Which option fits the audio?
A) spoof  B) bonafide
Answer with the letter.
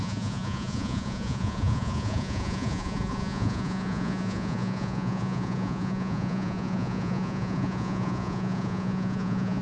A